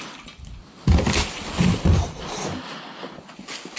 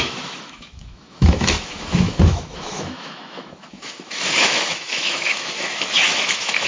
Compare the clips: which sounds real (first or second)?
first